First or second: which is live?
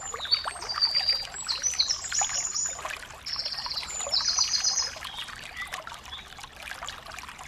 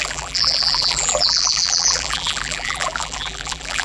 first